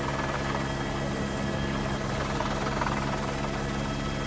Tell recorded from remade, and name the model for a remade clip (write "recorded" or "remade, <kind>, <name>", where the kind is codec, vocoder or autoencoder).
recorded